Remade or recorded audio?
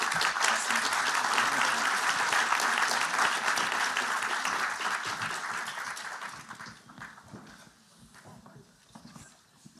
recorded